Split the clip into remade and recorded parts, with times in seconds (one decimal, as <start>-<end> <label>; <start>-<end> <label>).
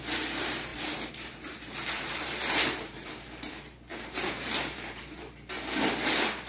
0.0-0.7 recorded; 0.7-3.5 remade; 3.5-3.9 recorded; 3.9-5.2 remade; 5.2-6.5 recorded